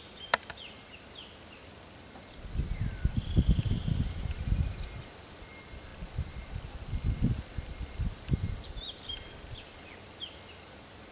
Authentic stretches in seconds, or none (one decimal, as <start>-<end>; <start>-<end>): 0.0-11.1